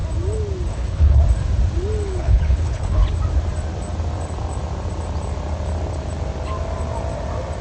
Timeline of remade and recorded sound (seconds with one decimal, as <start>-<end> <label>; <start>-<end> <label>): 0.0-0.7 recorded; 0.7-1.2 remade; 1.2-2.2 recorded; 2.2-3.0 remade; 3.0-7.6 recorded